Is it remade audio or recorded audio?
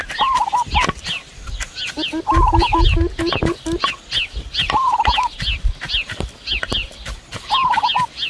recorded